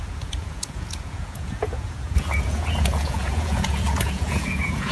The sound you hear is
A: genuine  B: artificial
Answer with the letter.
B